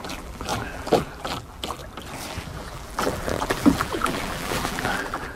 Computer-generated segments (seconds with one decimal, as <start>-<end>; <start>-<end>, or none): 0.0-1.8; 2.3-5.4

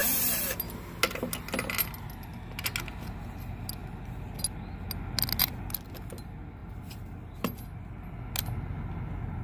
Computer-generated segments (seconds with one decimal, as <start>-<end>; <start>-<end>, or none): none

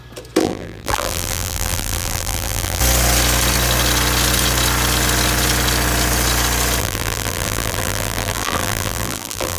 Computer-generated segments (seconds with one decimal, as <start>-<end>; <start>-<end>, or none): 0.4-2.8; 6.8-9.6

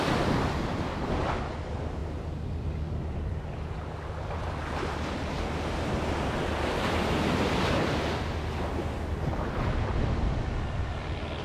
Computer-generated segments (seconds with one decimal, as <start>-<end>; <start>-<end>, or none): none